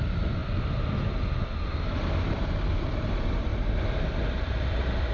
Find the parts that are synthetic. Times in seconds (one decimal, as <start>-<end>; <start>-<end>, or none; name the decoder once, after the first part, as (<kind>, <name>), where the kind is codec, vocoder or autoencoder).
0.0-0.4 (vocoder, BigVGAN v2); 1.5-3.5

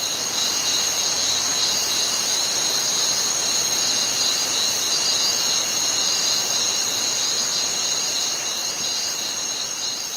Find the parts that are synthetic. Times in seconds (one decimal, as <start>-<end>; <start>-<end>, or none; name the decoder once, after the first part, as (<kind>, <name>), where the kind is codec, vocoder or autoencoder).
1.5-3.1 (vocoder, BigVGAN v2); 9.4-10.2

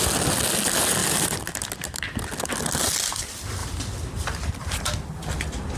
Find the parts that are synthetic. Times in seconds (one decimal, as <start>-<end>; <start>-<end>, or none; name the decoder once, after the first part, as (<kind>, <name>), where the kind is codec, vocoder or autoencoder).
3.6-4.5 (vocoder, BigVGAN v2)

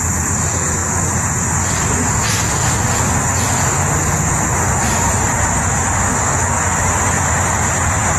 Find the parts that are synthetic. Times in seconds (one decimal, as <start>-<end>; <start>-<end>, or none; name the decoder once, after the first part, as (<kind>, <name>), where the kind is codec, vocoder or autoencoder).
none

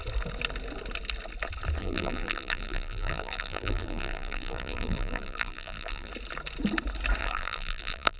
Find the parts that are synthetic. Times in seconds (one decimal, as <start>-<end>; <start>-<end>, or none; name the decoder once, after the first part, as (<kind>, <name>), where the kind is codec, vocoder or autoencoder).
1.8-6.1 (vocoder, BigVGAN v2); 7.2-8.2

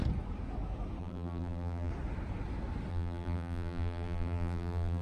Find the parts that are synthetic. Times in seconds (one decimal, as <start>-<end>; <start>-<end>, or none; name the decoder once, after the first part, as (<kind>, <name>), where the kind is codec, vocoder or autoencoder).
1.0-1.9 (vocoder, BigVGAN v2); 2.9-5.0

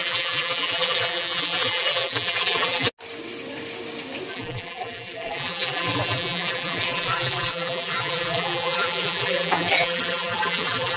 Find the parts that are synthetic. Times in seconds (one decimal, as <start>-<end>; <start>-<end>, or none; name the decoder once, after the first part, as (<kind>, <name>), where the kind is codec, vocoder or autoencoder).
0.0-2.9 (vocoder, BigVGAN v2); 4.3-11.0